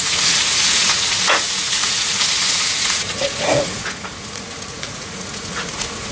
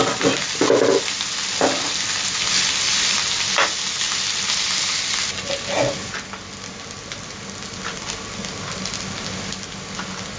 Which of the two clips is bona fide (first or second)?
second